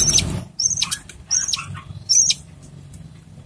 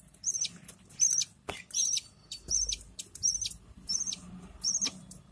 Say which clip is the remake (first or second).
second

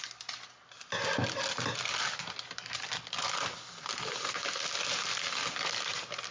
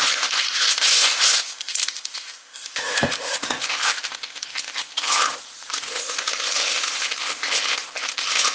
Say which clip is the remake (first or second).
second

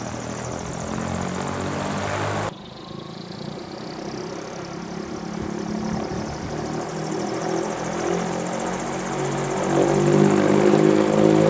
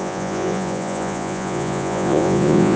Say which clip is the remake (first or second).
second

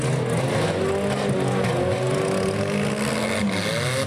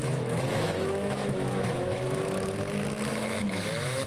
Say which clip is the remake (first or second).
second